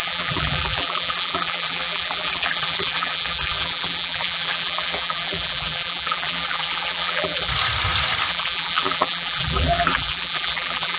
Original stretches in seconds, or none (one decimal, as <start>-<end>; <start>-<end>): 7.5-8.3